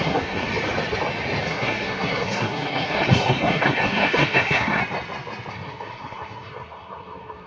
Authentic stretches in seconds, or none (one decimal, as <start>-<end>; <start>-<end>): 0.5-1.4; 4.8-5.5